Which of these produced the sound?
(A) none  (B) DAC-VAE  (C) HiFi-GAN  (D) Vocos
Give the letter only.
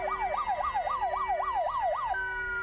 A